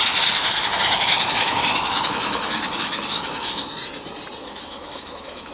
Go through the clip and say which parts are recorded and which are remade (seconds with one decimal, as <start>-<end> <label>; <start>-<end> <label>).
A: 0.0-0.4 recorded; 0.4-3.7 remade; 3.7-4.4 recorded; 4.4-5.5 remade